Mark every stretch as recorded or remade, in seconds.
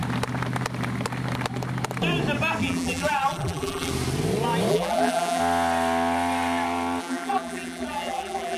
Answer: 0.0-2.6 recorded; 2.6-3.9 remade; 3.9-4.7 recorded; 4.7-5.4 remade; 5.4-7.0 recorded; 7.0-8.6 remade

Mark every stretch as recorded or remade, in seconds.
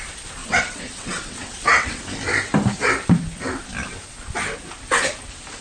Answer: 0.0-0.4 recorded; 0.4-2.0 remade; 2.0-5.6 recorded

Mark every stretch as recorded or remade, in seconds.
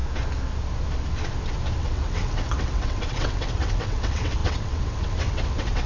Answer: 0.0-1.8 recorded; 1.8-5.9 remade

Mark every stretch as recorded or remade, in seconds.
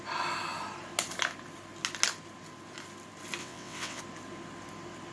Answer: 0.0-3.4 recorded; 3.4-4.0 remade; 4.0-5.1 recorded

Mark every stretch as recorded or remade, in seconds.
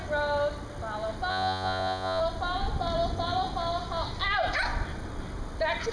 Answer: 0.0-1.3 recorded; 1.3-2.2 remade; 2.2-5.9 recorded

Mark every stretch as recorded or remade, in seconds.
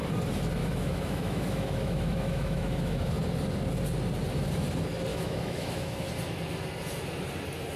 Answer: 0.0-0.6 recorded; 0.6-3.1 remade; 3.1-5.1 recorded; 5.1-6.1 remade; 6.1-7.8 recorded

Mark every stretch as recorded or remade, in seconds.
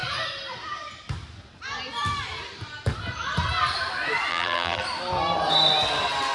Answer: 0.0-4.3 recorded; 4.3-4.8 remade; 4.8-6.3 recorded